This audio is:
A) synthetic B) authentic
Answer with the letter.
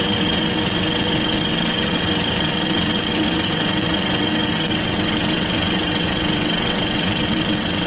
A